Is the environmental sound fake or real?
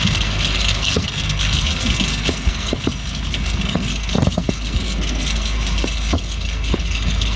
fake